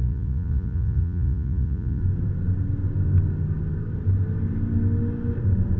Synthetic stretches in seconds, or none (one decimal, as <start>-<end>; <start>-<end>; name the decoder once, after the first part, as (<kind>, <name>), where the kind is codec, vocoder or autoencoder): 0.0-2.0 (vocoder, Vocos)